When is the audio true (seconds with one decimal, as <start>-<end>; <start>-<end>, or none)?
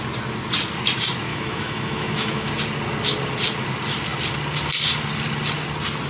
0.0-1.3; 2.5-6.1